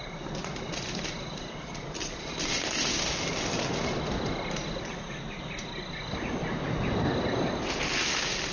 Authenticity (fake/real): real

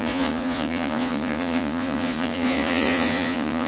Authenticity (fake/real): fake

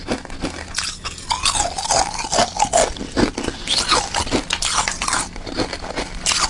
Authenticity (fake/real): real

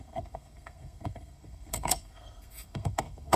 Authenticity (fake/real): fake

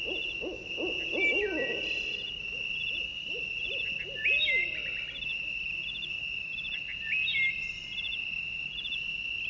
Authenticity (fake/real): real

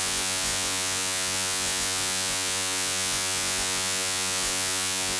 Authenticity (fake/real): fake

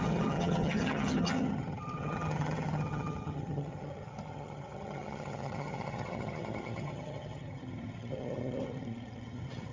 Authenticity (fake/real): fake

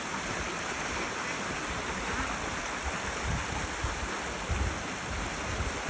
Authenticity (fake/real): real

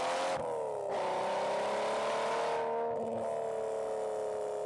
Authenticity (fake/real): real